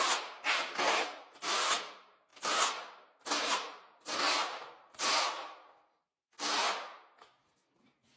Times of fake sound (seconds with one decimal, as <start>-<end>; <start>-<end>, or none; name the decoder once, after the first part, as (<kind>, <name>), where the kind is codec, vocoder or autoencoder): 4.4-5.0 (vocoder, BigVGAN v2)